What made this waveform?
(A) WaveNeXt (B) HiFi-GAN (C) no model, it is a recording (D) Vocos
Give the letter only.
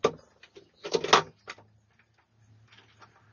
C